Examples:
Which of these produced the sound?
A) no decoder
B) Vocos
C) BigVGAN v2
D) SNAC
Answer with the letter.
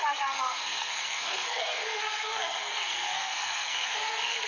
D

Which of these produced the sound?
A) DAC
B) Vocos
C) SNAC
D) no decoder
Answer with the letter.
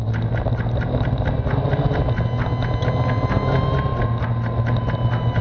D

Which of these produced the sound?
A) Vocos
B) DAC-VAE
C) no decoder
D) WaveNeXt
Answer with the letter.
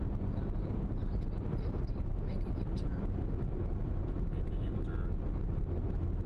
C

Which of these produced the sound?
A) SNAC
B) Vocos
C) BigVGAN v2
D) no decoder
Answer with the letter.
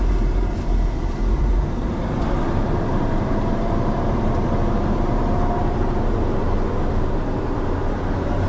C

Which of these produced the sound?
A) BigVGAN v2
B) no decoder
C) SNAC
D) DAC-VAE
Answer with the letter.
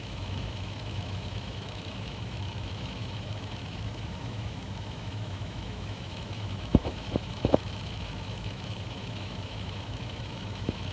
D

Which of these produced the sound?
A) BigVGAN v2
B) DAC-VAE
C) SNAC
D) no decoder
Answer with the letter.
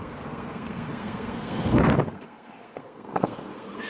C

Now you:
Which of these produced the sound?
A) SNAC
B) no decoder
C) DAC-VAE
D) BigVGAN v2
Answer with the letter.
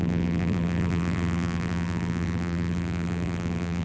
D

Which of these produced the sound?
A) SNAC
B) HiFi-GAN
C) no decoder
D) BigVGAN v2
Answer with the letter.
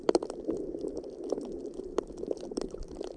D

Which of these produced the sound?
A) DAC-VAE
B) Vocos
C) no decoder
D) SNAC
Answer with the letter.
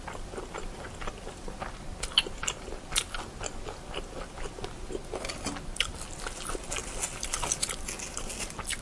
C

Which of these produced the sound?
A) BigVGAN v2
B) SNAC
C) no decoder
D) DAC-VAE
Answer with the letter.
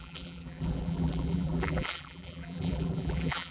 A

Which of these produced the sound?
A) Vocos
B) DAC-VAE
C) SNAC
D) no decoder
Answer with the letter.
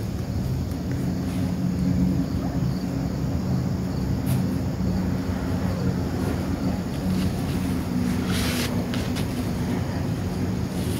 D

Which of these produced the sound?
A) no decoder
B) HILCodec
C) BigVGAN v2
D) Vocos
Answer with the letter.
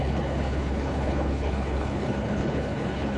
B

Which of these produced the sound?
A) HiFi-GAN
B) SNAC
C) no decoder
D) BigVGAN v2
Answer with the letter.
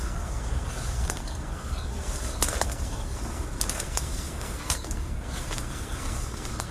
B